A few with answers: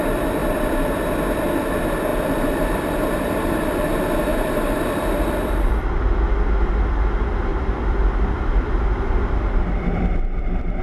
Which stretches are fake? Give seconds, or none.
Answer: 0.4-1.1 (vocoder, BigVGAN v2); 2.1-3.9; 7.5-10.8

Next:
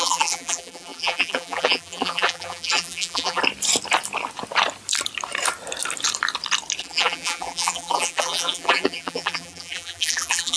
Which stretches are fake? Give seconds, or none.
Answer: 0.0-3.4 (vocoder, BigVGAN v2); 6.8-10.6

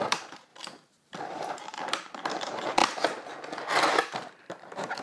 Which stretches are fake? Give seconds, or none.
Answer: 0.0-0.5 (vocoder, BigVGAN v2); 1.2-2.8; 4.4-5.0

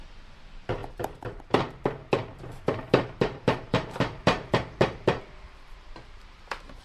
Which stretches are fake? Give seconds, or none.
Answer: 0.0-6.8 (vocoder, BigVGAN v2)

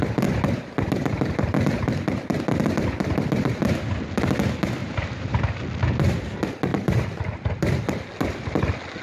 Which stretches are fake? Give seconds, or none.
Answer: 4.8-5.4 (vocoder, BigVGAN v2); 6.7-7.2

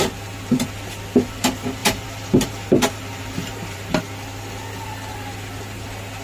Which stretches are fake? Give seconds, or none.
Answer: 1.8-4.0 (vocoder, BigVGAN v2)

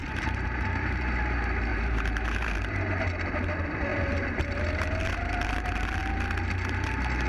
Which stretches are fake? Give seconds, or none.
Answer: 0.0-1.2 (vocoder, BigVGAN v2); 1.7-2.5; 3.9-5.0

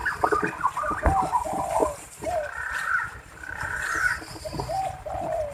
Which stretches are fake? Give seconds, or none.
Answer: 1.8-5.1 (vocoder, BigVGAN v2)